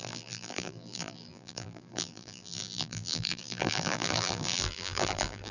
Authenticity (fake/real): fake